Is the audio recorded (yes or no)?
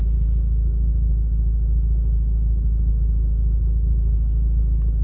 yes